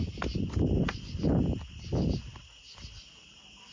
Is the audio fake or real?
real